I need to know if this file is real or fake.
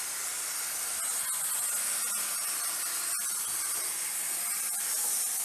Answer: real